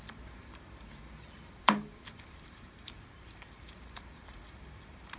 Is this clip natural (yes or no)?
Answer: no